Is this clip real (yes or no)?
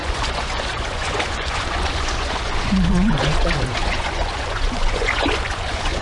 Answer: no